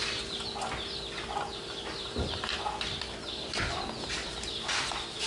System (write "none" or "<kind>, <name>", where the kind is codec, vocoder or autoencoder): none